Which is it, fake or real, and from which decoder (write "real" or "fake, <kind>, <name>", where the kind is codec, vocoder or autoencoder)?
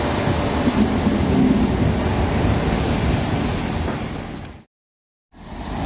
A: real